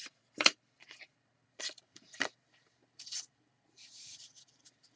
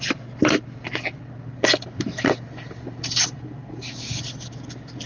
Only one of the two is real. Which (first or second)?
second